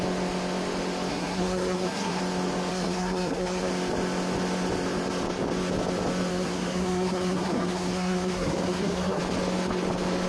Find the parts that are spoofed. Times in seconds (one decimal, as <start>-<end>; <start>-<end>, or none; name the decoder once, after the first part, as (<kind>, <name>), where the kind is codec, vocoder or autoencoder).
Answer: 1.1-2.2 (codec, SNAC); 2.7-3.7; 6.3-9.2